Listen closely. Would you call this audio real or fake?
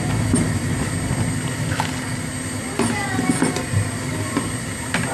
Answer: real